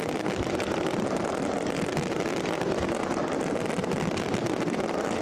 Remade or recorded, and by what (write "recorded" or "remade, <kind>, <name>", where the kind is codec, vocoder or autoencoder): recorded